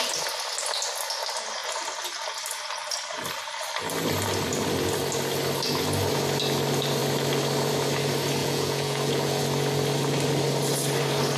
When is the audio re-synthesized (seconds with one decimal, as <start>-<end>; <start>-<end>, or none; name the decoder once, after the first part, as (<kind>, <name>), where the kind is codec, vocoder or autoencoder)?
8.4-9.4 (vocoder, Vocos)